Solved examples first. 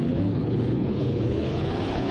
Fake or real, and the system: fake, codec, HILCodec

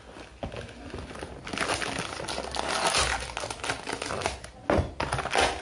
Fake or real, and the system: real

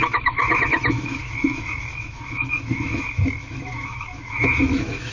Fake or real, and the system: fake, autoencoder, DAC-VAE